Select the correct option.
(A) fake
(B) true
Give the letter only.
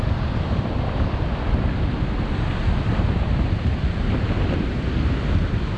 B